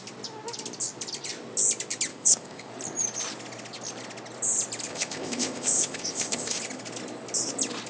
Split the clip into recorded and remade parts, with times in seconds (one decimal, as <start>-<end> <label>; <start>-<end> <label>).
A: 0.0-2.1 recorded; 2.1-2.7 remade; 2.7-4.9 recorded; 4.9-6.6 remade; 6.6-7.9 recorded